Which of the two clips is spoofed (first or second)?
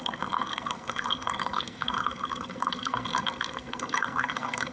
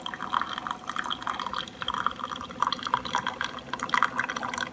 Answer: first